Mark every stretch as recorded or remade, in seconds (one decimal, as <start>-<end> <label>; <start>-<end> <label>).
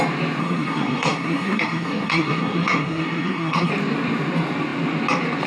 0.0-0.4 recorded; 0.4-3.7 remade; 3.7-5.5 recorded